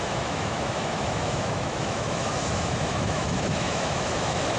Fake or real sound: fake